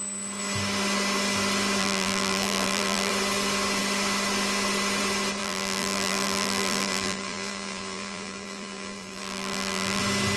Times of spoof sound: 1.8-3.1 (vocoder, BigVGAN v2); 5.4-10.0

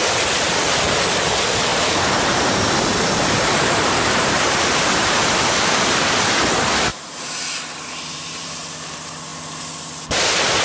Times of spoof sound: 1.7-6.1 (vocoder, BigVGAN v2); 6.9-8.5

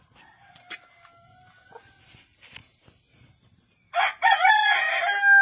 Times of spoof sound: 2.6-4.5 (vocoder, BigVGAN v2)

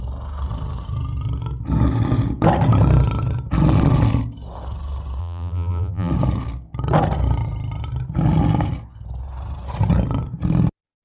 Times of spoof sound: 5.2-6.1 (vocoder, BigVGAN v2)

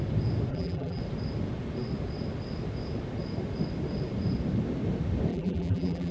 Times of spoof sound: 0.5-1.0 (vocoder, BigVGAN v2); 5.3-6.1